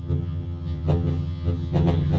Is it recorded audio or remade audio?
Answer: remade